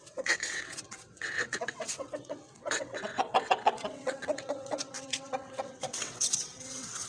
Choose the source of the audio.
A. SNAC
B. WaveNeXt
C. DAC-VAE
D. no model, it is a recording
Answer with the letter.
B